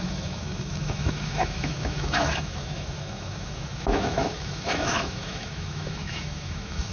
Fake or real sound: fake